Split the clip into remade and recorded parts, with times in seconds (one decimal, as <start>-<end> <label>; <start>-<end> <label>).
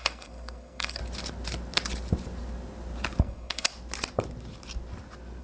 0.0-1.0 remade; 1.0-3.2 recorded; 3.2-3.7 remade; 3.7-5.4 recorded